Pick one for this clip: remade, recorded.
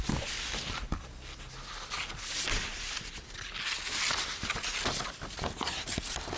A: recorded